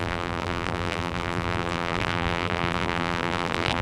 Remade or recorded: remade